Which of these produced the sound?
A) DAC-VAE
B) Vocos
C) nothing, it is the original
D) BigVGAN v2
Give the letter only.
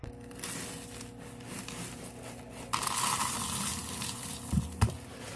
C